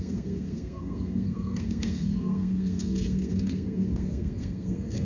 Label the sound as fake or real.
fake